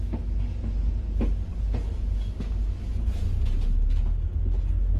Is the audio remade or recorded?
recorded